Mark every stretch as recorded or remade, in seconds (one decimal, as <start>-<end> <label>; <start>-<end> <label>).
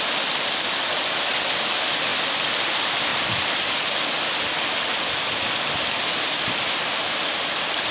0.0-7.9 recorded